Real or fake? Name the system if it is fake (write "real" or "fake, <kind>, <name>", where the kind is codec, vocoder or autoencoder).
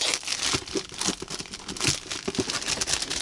real